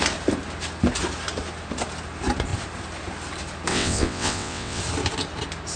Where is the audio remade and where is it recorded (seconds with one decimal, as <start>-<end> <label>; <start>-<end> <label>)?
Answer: 0.0-3.7 recorded; 3.7-4.8 remade; 4.8-5.8 recorded